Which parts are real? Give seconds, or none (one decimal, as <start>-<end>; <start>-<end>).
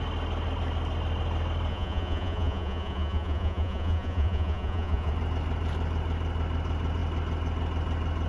0.0-1.7; 5.1-8.3